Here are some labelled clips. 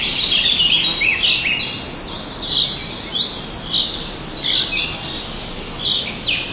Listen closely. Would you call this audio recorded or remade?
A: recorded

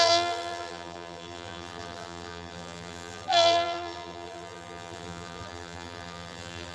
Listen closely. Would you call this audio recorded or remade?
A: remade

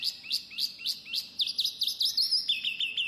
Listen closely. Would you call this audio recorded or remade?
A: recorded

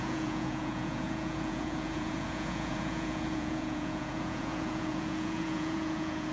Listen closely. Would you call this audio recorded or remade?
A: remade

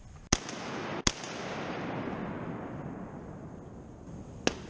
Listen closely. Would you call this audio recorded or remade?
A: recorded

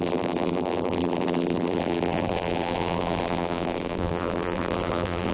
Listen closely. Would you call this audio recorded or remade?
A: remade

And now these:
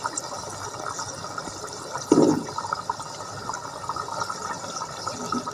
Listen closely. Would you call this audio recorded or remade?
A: recorded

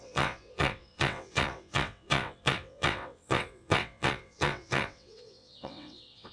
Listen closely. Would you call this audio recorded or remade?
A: remade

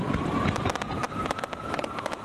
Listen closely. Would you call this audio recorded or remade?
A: remade